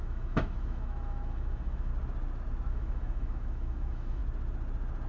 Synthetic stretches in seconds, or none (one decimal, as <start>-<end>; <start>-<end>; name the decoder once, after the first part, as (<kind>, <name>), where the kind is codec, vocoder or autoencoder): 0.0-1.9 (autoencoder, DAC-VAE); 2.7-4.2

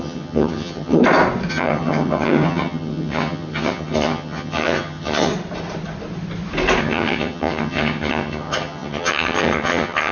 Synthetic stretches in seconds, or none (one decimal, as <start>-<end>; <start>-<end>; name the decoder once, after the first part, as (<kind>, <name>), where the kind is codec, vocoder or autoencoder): 0.0-1.0 (vocoder, HiFi-GAN); 1.5-5.3; 6.8-10.1

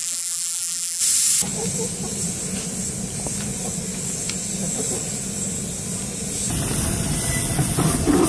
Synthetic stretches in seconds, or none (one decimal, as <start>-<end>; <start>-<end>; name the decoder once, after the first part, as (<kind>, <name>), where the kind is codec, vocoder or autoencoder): 0.0-1.0 (vocoder, BigVGAN v2)

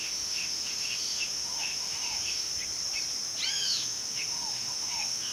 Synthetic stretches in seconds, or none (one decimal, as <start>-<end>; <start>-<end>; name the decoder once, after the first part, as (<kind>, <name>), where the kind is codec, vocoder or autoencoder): 0.0-2.5 (autoencoder, DAC-VAE); 3.5-5.3